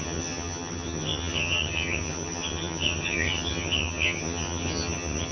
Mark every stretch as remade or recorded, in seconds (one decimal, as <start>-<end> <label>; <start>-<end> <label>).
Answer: 0.0-5.3 remade